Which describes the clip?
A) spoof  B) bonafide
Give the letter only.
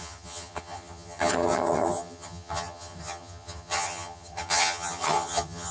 A